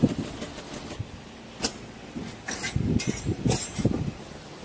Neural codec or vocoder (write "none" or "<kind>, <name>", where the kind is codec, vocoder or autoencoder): none